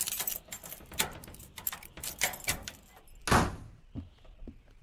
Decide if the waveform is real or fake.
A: real